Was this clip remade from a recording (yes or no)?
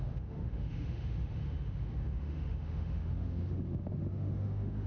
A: yes